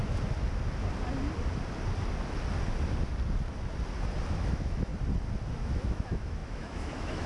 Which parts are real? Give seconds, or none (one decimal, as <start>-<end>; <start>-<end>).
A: 0.0-4.4; 4.9-5.5